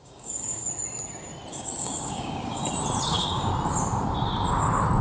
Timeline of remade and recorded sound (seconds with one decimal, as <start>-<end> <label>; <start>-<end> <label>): 0.0-0.6 remade; 0.6-1.5 recorded; 1.5-2.6 remade; 2.6-3.1 recorded; 3.1-3.5 remade; 3.5-5.0 recorded